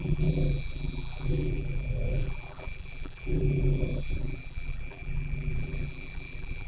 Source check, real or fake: fake